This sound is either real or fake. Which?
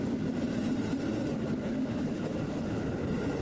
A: real